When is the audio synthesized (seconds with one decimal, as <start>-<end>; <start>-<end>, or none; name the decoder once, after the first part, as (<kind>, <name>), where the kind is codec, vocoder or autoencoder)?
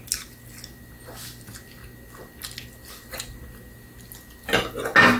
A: none